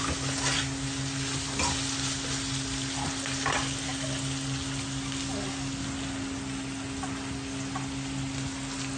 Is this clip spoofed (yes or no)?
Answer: no